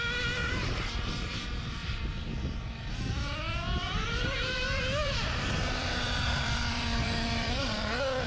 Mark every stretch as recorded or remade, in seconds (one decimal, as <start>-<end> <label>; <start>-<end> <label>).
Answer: 0.0-5.8 recorded; 5.8-7.9 remade; 7.9-8.3 recorded

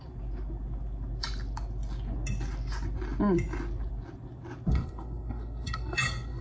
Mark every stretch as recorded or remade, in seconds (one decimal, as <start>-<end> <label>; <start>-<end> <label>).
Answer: 0.0-4.7 recorded; 4.7-6.4 remade